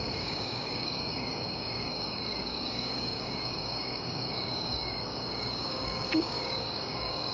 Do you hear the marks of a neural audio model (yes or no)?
yes